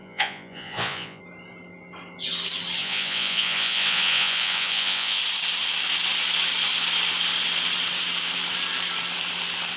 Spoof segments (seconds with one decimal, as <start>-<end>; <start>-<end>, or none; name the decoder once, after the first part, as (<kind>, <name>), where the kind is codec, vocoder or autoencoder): 0.0-1.2 (vocoder, Vocos); 2.8-5.2

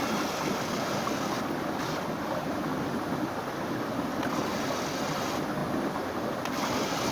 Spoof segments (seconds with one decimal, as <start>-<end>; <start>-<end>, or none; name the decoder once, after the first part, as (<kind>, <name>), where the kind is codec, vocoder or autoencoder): none